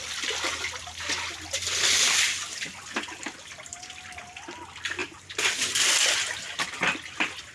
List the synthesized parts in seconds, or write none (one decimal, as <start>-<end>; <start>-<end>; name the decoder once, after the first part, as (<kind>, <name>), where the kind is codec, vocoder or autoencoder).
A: 5.0-5.9 (vocoder, BigVGAN v2)